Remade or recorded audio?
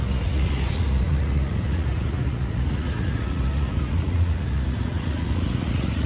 remade